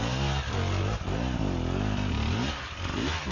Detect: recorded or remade recorded